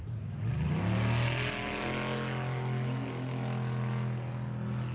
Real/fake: real